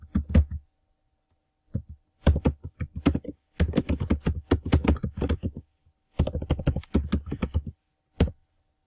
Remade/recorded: recorded